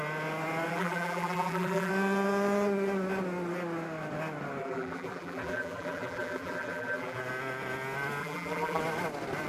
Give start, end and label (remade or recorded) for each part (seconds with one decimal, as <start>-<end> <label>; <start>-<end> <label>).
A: 0.0-0.7 recorded; 0.7-1.9 remade; 1.9-4.6 recorded; 4.6-7.2 remade; 7.2-8.2 recorded; 8.2-8.8 remade; 8.8-9.5 recorded